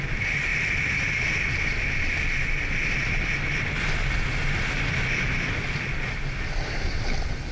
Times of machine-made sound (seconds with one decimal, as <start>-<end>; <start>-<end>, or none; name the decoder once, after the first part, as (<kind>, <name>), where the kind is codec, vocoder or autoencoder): none